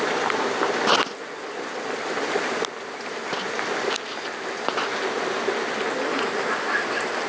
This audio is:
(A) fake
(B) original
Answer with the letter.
B